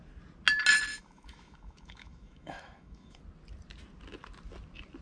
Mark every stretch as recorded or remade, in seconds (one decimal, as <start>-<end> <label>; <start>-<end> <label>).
0.0-0.9 recorded; 0.9-3.2 remade; 3.2-5.0 recorded